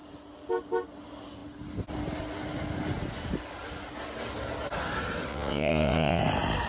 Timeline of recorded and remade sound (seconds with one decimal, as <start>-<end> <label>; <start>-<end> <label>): 0.0-5.3 recorded; 5.3-6.2 remade; 6.2-6.7 recorded